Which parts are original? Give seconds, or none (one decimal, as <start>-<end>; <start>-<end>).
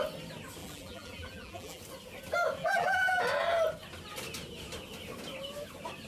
0.0-0.6; 1.8-2.6; 3.2-6.1